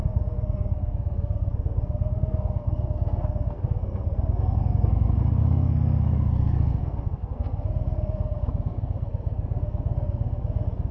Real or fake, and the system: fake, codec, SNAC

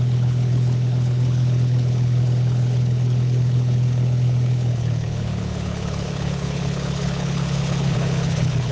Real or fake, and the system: fake, codec, HILCodec